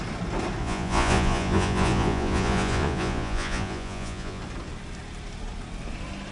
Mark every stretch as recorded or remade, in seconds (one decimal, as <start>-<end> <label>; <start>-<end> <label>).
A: 0.0-0.6 recorded; 0.6-4.4 remade; 4.4-6.3 recorded